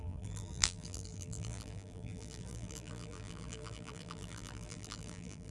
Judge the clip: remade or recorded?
remade